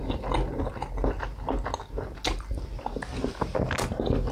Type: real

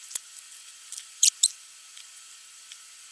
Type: real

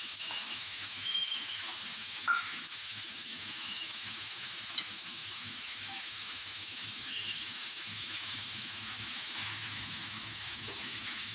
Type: fake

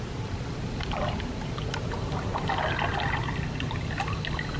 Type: real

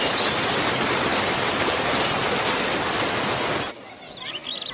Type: real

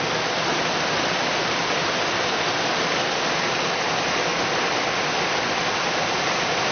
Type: real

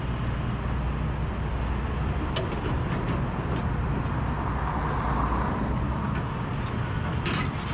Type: real